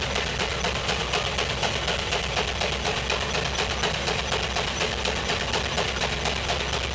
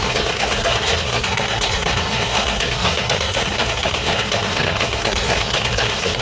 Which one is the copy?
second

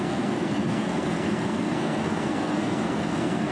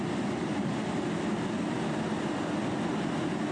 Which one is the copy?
first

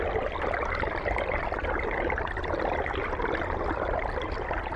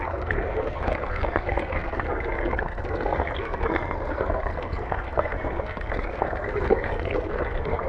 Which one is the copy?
second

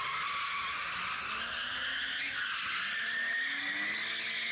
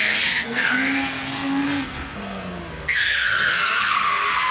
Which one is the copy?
second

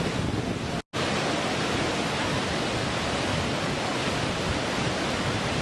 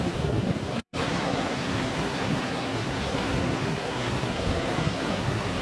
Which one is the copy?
second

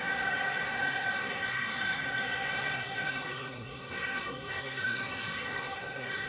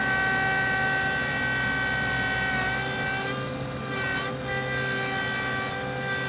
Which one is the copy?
first